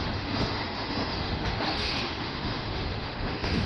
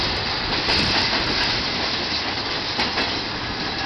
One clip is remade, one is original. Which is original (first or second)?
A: second